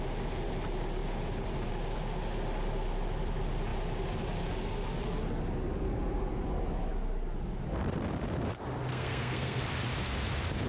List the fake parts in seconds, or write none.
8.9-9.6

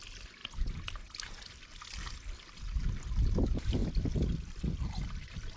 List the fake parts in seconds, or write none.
none

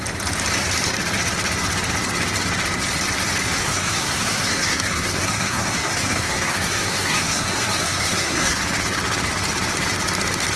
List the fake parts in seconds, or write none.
3.6-8.6

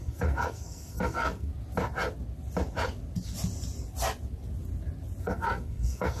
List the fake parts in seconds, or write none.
0.0-1.5; 5.2-6.2

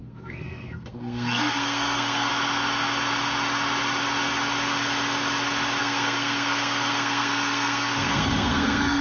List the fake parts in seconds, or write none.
0.0-2.3; 5.8-9.0

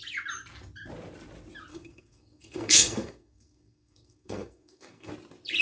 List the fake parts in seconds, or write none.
1.7-5.1